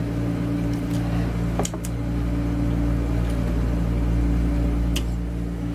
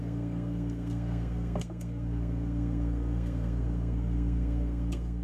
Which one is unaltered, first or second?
first